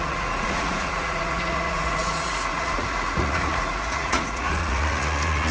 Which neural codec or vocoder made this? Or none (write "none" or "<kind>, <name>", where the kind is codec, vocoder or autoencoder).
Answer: vocoder, Vocos